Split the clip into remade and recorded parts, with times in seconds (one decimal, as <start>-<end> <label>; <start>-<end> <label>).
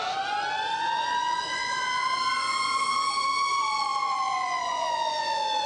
0.0-5.7 remade